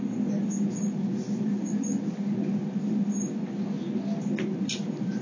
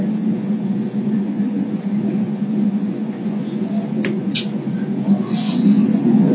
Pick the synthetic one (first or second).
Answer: second